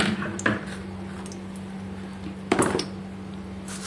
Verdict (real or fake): real